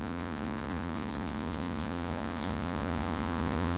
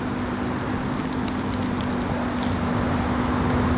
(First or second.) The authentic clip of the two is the second